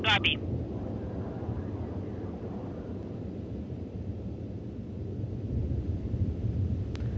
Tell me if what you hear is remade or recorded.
recorded